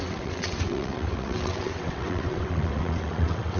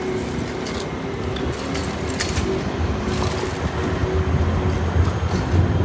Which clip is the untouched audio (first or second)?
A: second